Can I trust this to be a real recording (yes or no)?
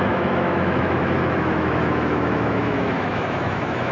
no